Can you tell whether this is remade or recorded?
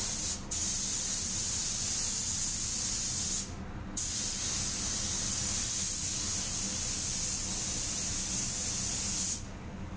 recorded